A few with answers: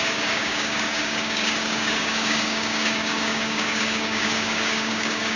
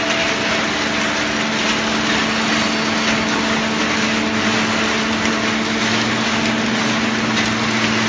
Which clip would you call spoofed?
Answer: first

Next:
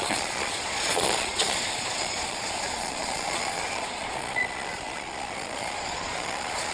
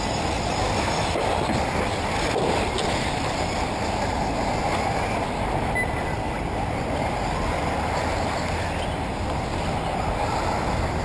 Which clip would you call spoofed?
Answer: first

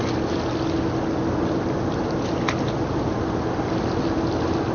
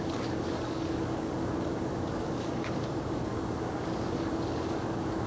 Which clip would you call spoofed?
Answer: second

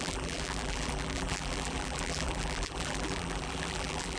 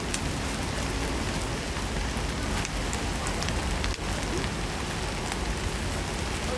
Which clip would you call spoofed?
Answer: first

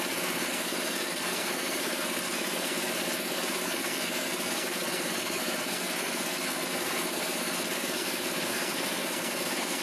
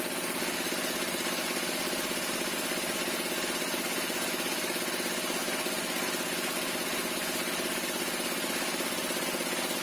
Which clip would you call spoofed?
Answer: first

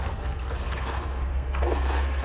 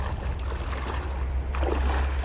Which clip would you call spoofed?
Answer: first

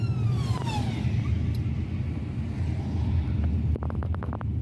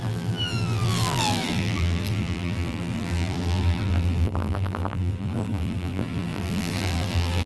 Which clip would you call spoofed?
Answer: second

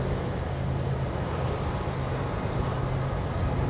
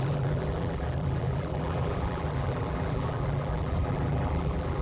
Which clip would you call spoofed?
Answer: second